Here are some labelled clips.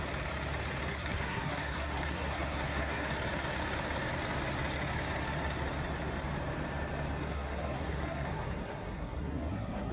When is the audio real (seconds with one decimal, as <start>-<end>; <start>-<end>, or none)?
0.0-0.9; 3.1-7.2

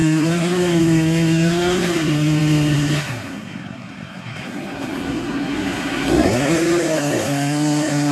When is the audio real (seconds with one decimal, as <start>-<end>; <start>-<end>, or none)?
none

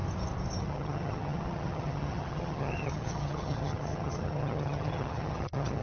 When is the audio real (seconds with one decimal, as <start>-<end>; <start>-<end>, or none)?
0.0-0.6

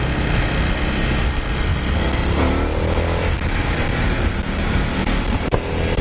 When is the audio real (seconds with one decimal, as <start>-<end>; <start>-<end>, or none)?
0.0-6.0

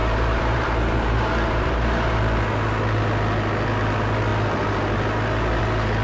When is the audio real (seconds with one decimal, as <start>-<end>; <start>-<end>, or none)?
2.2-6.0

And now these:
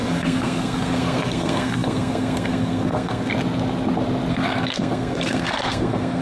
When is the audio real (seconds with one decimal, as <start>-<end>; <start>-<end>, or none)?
3.3-4.3

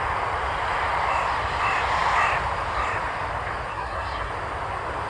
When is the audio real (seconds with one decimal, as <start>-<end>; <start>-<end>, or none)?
0.0-3.7; 4.3-5.1